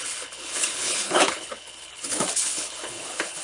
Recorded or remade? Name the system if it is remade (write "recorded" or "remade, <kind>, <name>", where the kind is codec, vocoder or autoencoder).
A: remade, codec, HILCodec